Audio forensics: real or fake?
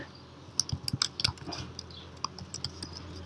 real